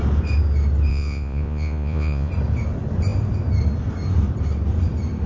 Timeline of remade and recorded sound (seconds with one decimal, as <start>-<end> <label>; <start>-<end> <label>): 0.0-0.9 recorded; 0.9-2.3 remade; 2.3-5.3 recorded